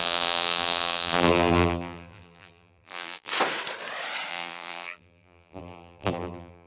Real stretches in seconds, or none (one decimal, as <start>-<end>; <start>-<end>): 3.3-4.3